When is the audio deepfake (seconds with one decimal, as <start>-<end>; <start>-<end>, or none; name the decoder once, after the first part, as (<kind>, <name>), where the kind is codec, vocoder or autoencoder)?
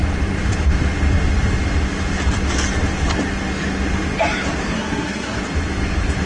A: 4.7-5.4 (codec, SNAC)